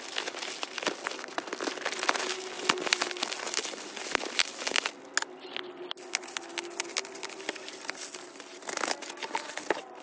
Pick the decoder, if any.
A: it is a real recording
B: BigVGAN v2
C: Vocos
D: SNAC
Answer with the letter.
A